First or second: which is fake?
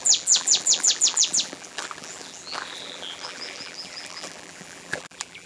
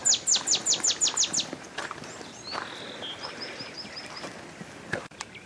first